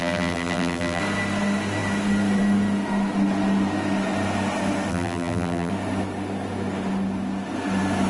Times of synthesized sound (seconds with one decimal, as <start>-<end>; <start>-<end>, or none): 0.0-1.0; 4.9-5.7